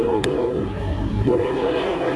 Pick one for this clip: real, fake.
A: fake